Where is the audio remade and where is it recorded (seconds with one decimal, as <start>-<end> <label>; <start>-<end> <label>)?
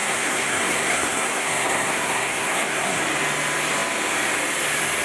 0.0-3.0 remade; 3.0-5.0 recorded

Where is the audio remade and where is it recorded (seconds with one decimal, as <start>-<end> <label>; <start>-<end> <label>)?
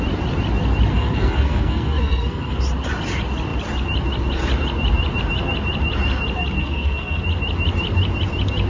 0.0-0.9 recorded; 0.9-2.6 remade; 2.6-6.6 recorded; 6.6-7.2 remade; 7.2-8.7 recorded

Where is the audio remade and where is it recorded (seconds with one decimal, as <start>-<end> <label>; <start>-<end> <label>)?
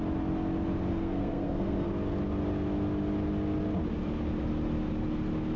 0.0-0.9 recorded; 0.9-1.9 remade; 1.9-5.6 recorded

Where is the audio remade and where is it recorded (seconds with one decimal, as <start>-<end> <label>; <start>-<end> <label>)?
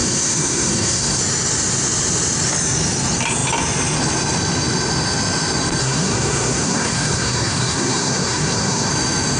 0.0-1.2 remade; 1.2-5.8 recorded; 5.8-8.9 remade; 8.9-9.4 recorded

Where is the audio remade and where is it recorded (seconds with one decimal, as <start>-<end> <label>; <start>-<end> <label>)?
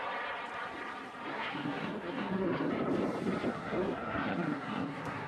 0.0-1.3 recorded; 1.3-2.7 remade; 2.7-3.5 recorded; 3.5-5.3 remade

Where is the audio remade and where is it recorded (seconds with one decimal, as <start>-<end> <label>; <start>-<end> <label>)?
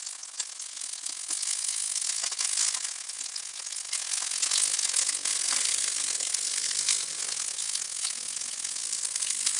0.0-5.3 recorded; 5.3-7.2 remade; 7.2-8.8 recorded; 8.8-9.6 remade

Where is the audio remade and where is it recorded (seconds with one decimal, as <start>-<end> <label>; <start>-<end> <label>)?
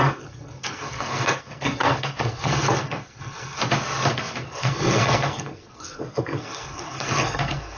0.0-3.6 remade; 3.6-4.1 recorded; 4.1-7.8 remade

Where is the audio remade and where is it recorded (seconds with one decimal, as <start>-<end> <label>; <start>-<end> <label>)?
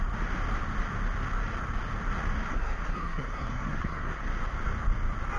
0.0-2.5 recorded; 2.5-4.2 remade; 4.2-5.4 recorded